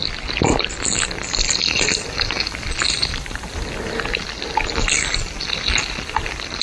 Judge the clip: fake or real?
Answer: real